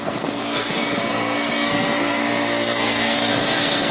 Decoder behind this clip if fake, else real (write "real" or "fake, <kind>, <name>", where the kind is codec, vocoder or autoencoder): fake, codec, SNAC